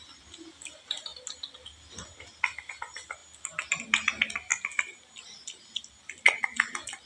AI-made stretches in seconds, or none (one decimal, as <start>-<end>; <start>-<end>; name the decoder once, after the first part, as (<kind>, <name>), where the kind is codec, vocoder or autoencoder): none